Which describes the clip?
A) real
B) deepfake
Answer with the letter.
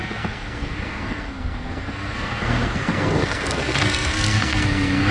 B